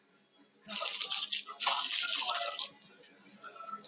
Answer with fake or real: real